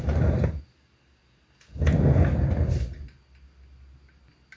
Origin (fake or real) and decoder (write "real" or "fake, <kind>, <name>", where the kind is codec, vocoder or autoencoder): real